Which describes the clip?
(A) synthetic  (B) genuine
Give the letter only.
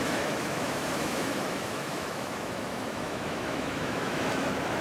A